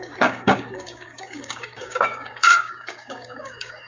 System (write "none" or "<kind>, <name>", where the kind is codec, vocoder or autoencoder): codec, DAC